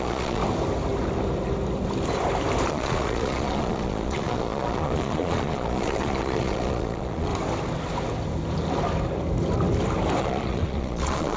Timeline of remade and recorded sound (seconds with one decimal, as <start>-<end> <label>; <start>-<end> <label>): 0.0-0.4 remade; 0.4-2.7 recorded; 2.7-7.3 remade; 7.3-10.2 recorded; 10.2-11.4 remade